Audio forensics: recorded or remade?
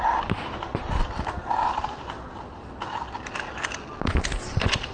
recorded